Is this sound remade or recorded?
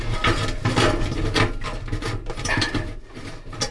recorded